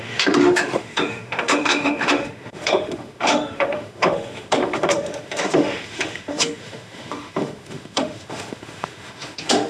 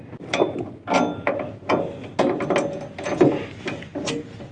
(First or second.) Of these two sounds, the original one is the second